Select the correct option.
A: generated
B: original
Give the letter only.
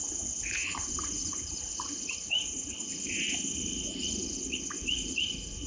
A